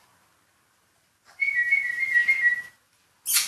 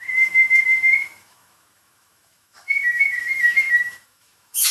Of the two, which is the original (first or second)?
first